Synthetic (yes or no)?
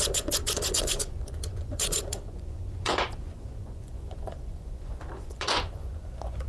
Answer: yes